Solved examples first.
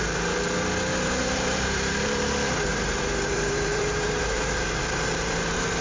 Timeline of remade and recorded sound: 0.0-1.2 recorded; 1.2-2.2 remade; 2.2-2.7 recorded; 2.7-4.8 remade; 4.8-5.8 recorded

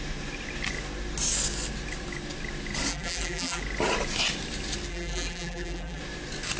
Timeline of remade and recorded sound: 0.0-2.9 recorded; 2.9-3.6 remade; 3.6-4.9 recorded; 4.9-6.0 remade; 6.0-6.6 recorded

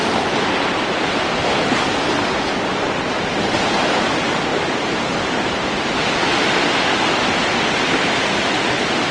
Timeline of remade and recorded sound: 0.0-4.5 recorded; 4.5-5.8 remade; 5.8-9.1 recorded

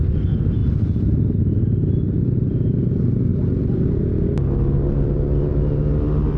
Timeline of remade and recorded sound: 0.0-3.3 recorded; 3.3-4.0 remade; 4.0-6.4 recorded

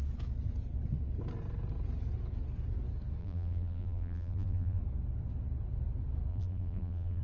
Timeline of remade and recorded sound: 0.0-3.2 recorded; 3.2-4.8 remade; 4.8-6.3 recorded; 6.3-7.2 remade

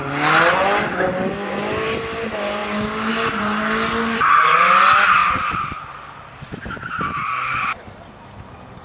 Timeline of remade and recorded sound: 0.0-0.5 remade; 0.5-5.2 recorded; 5.2-6.9 remade; 6.9-8.8 recorded

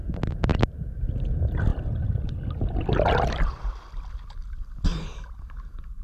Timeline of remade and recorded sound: 0.0-6.0 recorded